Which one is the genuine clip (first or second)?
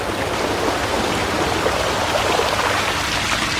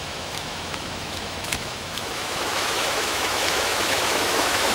first